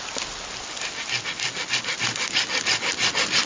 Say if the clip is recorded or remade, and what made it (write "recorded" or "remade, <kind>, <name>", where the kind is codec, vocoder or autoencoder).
recorded